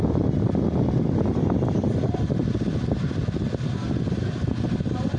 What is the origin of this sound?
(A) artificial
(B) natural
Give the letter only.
B